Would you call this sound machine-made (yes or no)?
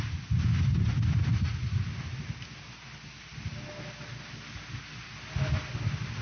no